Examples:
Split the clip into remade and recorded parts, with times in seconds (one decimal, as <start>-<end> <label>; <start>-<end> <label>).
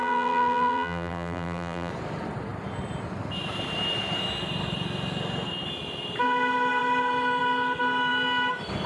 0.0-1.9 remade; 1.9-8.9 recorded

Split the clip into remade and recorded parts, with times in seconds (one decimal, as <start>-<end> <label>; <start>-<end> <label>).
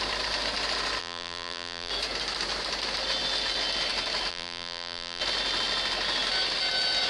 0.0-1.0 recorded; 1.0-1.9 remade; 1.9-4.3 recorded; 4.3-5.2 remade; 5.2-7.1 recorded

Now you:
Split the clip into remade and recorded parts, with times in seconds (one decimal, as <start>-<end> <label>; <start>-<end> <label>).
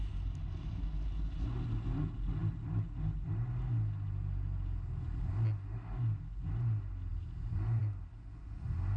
0.0-9.0 recorded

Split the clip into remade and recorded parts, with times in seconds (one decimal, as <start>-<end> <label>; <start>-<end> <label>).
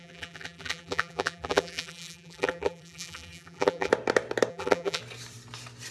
0.0-3.9 remade; 3.9-4.5 recorded; 4.5-5.0 remade; 5.0-5.9 recorded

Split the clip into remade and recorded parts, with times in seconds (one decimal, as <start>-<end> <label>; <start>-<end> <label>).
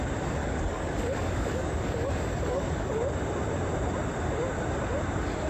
0.0-0.4 recorded; 0.4-3.0 remade; 3.0-5.5 recorded